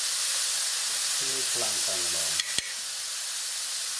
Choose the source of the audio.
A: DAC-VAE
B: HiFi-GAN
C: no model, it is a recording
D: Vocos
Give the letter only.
C